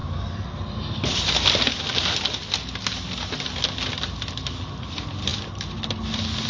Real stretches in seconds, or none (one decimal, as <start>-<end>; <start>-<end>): 0.0-6.5